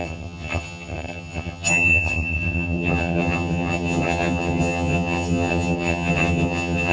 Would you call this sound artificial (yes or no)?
yes